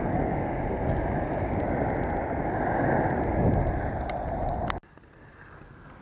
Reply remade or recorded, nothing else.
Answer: recorded